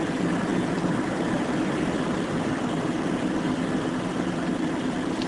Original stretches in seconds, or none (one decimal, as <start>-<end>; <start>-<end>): 0.0-0.5; 3.7-5.3